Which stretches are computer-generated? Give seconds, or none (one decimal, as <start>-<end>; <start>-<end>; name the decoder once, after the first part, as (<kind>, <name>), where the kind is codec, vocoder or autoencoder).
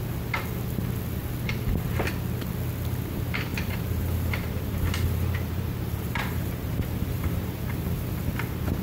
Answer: 3.5-8.1 (vocoder, BigVGAN v2)